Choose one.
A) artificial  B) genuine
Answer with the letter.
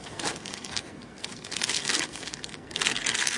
A